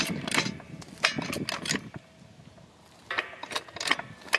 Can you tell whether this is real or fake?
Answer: real